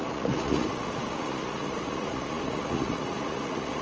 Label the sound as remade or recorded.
remade